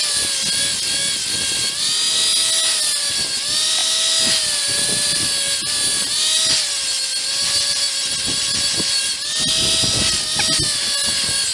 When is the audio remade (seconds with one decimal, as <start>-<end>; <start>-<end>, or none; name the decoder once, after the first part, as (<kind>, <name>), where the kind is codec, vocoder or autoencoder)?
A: none